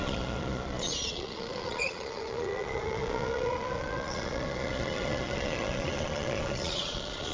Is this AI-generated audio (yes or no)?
yes